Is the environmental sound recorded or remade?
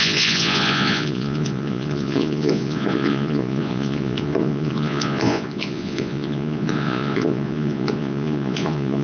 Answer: remade